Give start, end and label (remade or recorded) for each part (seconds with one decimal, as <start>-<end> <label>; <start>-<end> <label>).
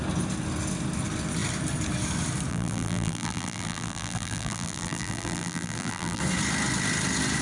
0.0-2.5 recorded; 2.5-6.2 remade; 6.2-7.4 recorded